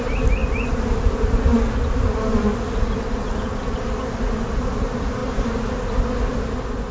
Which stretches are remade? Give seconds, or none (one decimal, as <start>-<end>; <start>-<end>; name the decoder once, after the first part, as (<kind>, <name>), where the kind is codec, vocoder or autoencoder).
none